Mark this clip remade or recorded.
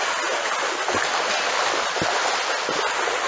recorded